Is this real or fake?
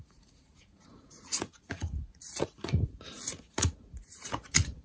fake